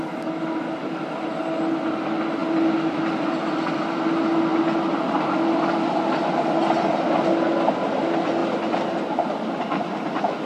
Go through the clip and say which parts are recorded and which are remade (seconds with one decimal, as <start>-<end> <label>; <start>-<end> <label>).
0.0-2.4 recorded; 2.4-3.4 remade; 3.4-4.5 recorded; 4.5-5.3 remade; 5.3-10.4 recorded